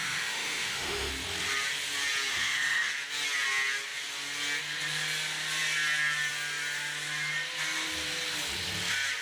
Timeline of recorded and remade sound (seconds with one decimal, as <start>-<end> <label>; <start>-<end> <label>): 0.0-1.1 remade; 1.1-2.3 recorded; 2.3-2.9 remade; 2.9-9.2 recorded